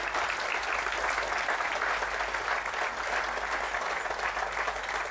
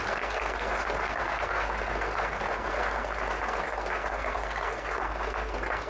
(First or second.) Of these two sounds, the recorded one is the first